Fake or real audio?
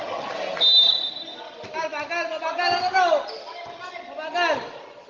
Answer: real